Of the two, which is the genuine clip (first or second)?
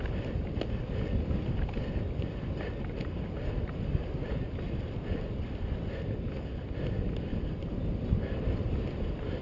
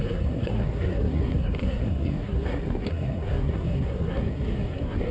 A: first